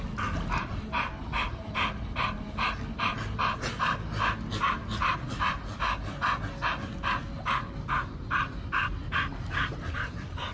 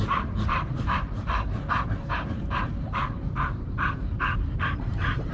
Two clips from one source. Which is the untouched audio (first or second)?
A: first